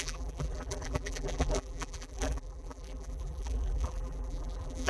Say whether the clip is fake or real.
fake